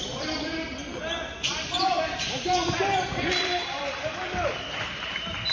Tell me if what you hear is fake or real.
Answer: fake